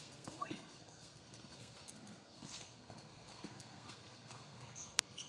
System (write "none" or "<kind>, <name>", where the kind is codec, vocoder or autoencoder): codec, SNAC